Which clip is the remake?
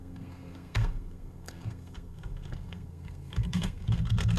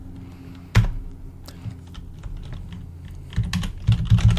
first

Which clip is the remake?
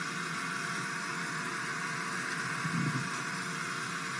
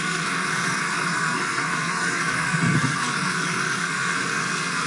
second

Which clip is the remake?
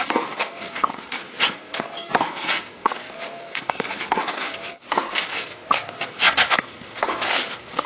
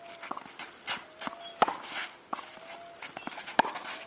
first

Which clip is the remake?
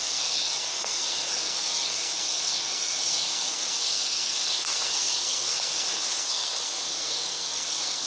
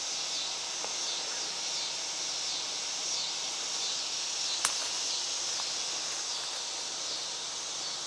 first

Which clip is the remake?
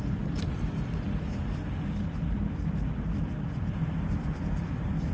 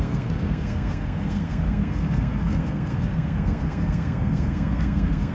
second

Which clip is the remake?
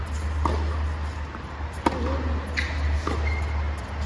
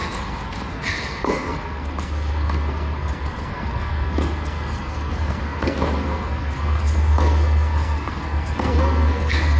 second